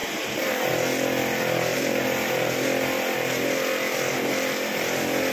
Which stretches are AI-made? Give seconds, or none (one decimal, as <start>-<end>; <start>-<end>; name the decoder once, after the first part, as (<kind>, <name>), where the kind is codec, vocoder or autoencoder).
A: 0.0-0.7 (vocoder, BigVGAN v2); 1.7-2.5